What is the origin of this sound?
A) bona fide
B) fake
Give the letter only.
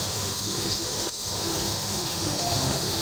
B